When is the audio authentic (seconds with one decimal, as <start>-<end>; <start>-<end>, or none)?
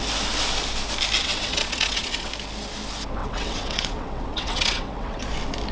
0.0-1.2; 2.3-3.2; 5.2-5.7